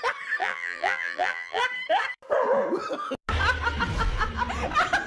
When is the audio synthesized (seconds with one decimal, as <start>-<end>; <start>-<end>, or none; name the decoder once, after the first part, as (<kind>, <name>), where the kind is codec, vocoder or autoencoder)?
0.4-1.6 (vocoder, BigVGAN v2)